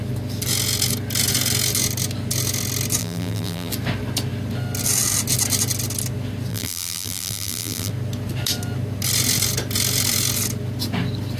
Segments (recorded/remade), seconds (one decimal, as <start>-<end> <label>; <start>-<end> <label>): 0.0-3.0 recorded; 3.0-3.7 remade; 3.7-6.5 recorded; 6.5-7.9 remade; 7.9-11.4 recorded